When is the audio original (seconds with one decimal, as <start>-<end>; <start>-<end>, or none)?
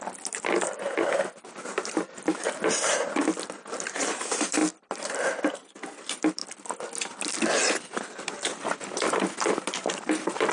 4.6-5.4; 6.4-7.7